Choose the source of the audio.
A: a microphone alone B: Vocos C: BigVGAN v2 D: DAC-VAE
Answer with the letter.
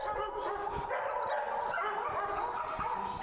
A